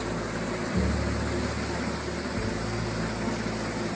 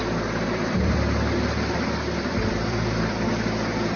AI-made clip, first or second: second